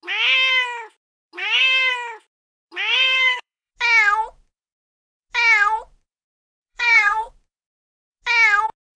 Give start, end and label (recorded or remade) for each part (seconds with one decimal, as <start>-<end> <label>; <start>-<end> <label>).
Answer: 0.0-1.4 recorded; 1.4-1.9 remade; 1.9-2.9 recorded; 2.9-3.7 remade; 3.7-6.7 recorded; 6.7-7.3 remade; 7.3-9.0 recorded